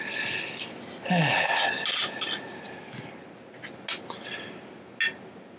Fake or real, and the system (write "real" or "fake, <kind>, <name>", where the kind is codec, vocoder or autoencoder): real